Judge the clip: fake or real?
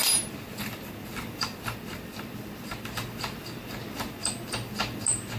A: real